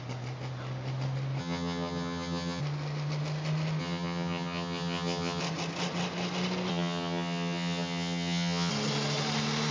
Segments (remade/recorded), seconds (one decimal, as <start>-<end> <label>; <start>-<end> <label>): 0.0-1.4 recorded; 1.4-2.6 remade; 2.6-3.8 recorded; 3.8-5.4 remade; 5.4-6.7 recorded; 6.7-8.7 remade; 8.7-9.7 recorded